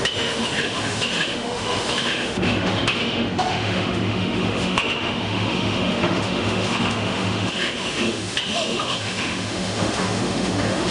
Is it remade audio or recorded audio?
remade